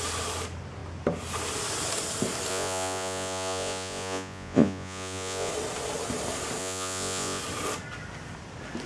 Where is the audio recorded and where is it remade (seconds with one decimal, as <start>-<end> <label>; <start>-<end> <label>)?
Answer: 0.0-2.5 recorded; 2.5-5.5 remade; 5.5-6.6 recorded; 6.6-7.4 remade; 7.4-8.9 recorded